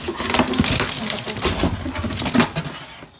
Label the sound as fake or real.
real